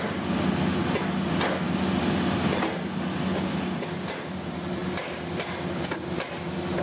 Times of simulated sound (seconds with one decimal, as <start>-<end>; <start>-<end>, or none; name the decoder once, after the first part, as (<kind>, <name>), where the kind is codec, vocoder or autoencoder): 4.8-6.3 (vocoder, BigVGAN v2)